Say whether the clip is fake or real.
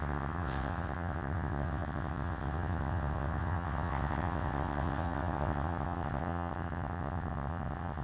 fake